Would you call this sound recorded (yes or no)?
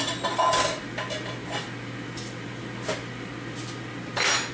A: yes